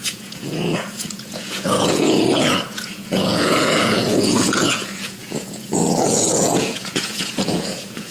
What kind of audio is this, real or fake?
fake